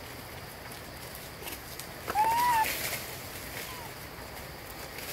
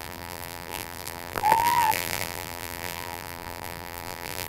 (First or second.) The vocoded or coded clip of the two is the second